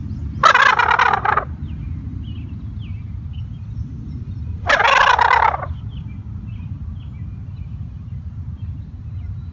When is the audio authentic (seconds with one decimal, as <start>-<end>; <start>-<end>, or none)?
0.0-3.3; 5.8-9.5